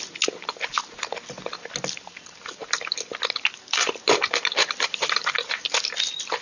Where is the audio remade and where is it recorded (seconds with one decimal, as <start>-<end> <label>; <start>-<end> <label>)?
0.0-2.6 recorded; 2.6-5.7 remade; 5.7-6.4 recorded